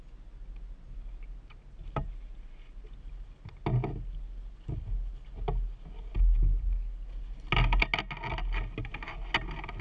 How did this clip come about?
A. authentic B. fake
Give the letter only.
A